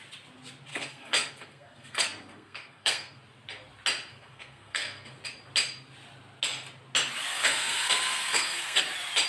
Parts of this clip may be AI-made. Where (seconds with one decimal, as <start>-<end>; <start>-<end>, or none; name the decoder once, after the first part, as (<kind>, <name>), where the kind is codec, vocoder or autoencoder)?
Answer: 0.7-3.2 (codec, SNAC); 4.1-5.2; 7.3-8.8